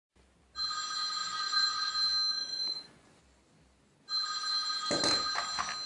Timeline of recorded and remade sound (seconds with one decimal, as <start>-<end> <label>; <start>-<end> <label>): 0.0-1.2 recorded; 1.2-1.9 remade; 1.9-2.3 recorded; 2.3-3.2 remade; 3.2-5.9 recorded